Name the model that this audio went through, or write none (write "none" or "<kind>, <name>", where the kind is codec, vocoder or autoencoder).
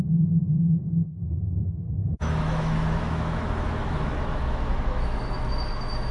autoencoder, DAC-VAE